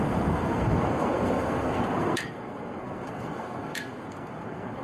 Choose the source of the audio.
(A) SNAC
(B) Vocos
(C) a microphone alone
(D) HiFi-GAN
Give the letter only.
A